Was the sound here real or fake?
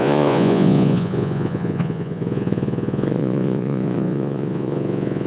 fake